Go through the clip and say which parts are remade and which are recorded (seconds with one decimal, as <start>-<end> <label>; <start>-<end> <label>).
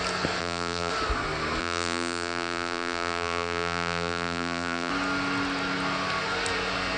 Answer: 0.0-0.4 recorded; 0.4-0.9 remade; 0.9-1.6 recorded; 1.6-4.9 remade; 4.9-7.0 recorded